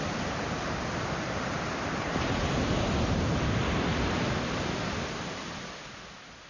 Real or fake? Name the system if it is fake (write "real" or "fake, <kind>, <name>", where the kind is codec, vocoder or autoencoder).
real